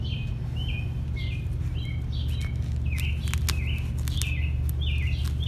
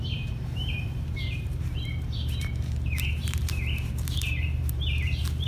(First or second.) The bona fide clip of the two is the first